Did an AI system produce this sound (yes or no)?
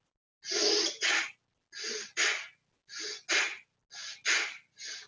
no